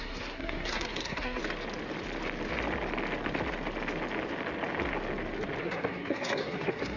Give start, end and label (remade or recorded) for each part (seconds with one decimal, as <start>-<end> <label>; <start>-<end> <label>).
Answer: 0.0-1.4 remade; 1.4-5.6 recorded; 5.6-7.0 remade